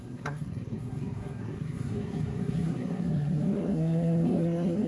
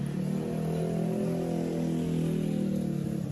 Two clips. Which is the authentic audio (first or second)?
second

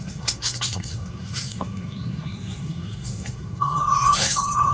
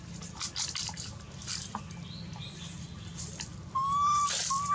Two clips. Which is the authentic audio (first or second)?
second